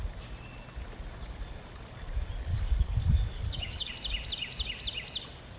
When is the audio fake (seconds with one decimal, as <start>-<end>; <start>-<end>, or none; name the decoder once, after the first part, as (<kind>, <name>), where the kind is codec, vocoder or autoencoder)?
2.5-3.9 (codec, DAC)

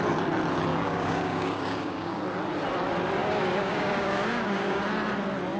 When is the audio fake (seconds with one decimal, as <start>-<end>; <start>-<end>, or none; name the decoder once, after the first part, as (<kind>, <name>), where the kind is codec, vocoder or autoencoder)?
0.7-2.2 (codec, DAC); 3.2-4.8

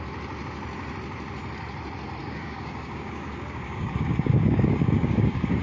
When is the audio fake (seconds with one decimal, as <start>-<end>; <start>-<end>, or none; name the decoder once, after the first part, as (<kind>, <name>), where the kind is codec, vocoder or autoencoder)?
2.2-5.6 (codec, DAC)

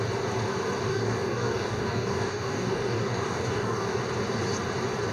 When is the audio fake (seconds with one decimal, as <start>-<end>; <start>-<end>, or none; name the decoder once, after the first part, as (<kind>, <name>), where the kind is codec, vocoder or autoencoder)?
0.9-4.0 (codec, DAC)

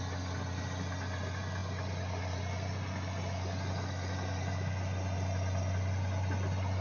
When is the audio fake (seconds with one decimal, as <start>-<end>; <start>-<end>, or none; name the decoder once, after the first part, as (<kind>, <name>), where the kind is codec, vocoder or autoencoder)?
none

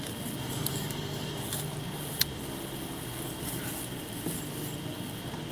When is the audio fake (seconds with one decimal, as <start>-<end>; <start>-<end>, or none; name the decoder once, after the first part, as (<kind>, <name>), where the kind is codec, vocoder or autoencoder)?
0.7-1.3 (codec, DAC)